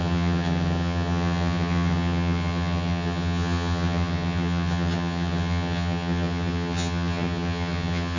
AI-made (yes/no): yes